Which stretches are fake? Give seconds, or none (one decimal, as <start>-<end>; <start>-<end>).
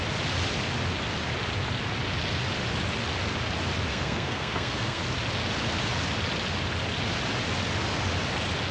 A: 3.9-5.0